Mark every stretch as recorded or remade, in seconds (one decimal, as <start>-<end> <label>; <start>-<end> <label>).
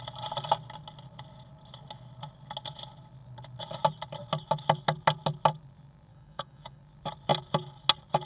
0.0-6.1 recorded; 6.1-6.8 remade; 6.8-8.3 recorded